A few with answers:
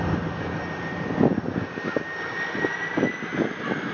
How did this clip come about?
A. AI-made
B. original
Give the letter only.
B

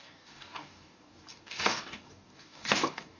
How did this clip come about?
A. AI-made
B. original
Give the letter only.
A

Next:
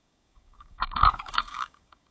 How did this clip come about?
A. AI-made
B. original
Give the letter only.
A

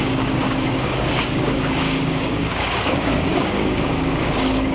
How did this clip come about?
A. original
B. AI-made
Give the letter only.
B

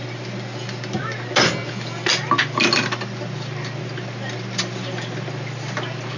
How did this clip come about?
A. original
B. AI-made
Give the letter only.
A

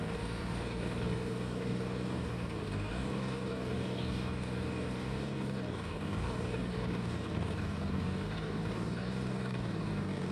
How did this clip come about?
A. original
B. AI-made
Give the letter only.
B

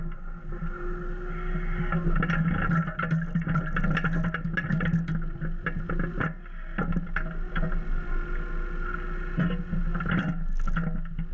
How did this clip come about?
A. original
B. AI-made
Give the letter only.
A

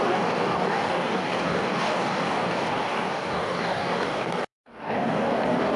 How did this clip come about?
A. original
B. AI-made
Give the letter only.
B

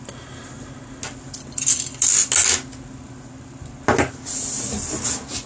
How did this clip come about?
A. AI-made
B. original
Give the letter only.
B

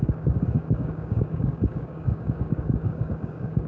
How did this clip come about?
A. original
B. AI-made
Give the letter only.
B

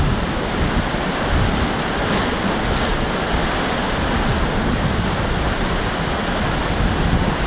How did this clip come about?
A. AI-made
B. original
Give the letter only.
B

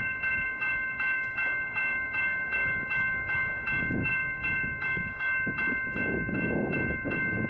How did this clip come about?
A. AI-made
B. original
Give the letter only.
A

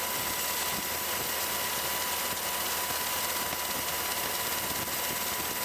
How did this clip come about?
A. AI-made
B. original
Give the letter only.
B